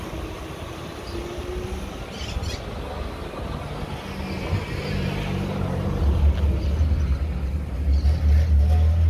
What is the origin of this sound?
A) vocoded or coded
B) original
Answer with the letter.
B